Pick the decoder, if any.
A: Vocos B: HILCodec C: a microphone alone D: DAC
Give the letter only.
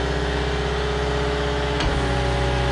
C